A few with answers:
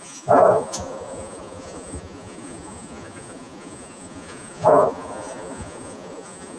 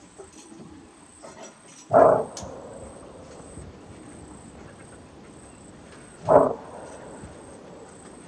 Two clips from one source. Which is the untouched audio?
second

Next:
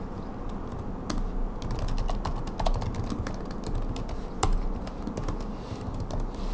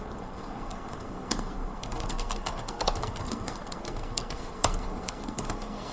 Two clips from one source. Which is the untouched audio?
first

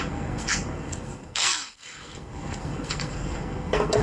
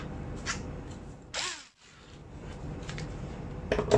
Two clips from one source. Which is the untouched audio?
second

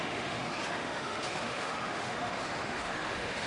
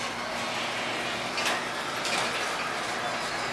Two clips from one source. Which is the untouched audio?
second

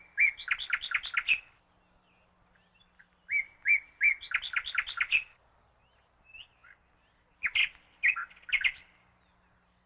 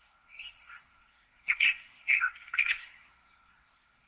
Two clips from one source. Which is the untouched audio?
first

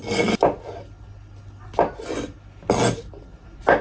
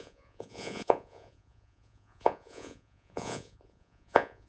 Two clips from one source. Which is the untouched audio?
first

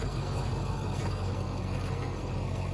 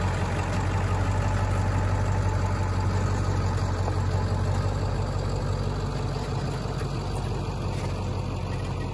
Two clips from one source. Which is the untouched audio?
second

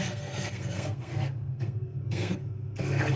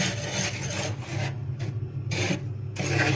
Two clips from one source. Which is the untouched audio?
second